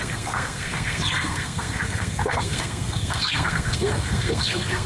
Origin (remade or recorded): remade